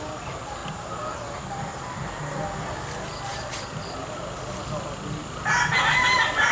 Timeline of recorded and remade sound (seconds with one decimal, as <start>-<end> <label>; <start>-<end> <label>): 0.0-6.5 recorded